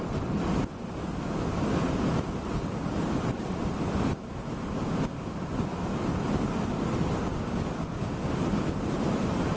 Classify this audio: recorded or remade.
recorded